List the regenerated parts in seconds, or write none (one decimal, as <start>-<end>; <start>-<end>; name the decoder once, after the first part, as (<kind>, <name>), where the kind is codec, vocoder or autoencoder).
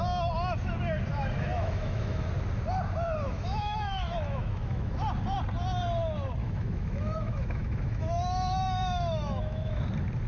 1.1-2.3 (autoencoder, DAC-VAE); 3.3-5.0; 6.4-9.8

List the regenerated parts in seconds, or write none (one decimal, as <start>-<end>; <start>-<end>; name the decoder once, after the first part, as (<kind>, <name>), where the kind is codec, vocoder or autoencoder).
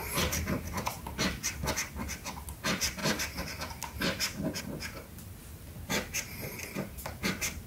none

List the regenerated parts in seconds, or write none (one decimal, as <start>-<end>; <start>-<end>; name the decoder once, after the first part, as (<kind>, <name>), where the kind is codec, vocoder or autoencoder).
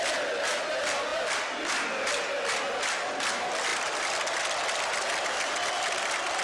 none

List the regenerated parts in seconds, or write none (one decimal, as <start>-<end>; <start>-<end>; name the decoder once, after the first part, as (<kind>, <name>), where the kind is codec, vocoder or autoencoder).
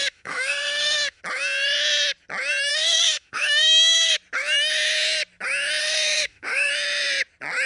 0.0-1.2 (autoencoder, DAC-VAE); 2.7-4.1; 5.8-6.7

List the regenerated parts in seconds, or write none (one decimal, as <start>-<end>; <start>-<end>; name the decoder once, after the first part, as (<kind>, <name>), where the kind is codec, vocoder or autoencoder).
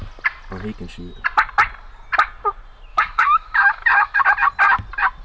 2.9-4.2 (autoencoder, DAC-VAE)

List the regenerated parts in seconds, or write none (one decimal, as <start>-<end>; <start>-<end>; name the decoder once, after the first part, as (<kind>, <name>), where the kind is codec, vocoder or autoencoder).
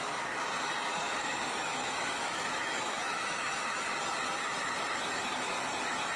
0.9-3.3 (autoencoder, DAC-VAE)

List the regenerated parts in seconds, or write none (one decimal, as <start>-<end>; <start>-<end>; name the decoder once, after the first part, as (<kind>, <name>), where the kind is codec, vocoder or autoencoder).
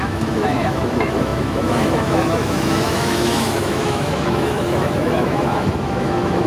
0.0-6.5 (autoencoder, DAC-VAE)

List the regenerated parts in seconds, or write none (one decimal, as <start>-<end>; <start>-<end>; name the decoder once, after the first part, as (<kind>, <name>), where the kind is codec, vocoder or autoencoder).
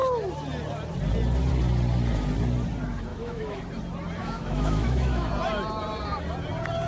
3.1-3.6 (autoencoder, DAC-VAE); 4.2-5.3